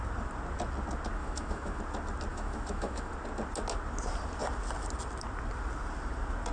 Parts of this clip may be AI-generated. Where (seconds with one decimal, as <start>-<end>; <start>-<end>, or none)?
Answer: 1.2-1.8; 2.3-3.1